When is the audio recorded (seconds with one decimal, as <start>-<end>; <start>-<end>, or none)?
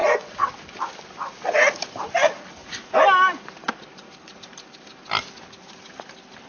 0.5-6.5